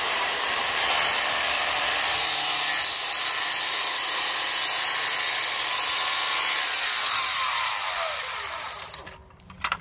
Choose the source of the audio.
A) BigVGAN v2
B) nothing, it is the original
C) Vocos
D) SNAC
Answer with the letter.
A